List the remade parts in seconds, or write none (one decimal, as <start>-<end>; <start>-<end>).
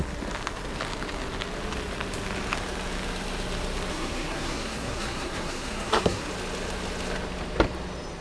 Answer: 3.9-6.3